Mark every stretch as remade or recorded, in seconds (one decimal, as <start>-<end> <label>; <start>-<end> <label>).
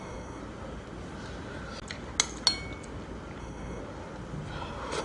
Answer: 0.0-0.4 remade; 0.4-3.4 recorded; 3.4-3.8 remade; 3.8-5.0 recorded